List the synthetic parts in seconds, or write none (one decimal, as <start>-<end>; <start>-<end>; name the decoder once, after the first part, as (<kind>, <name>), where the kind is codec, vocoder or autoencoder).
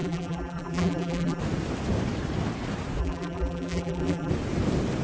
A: 0.0-1.4 (vocoder, BigVGAN v2); 3.0-4.3